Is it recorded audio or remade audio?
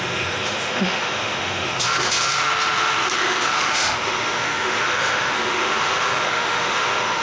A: remade